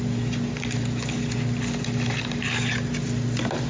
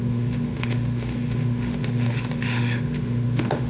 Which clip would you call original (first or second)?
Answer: first